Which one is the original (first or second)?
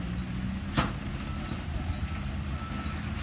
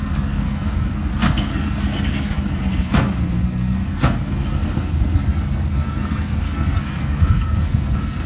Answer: first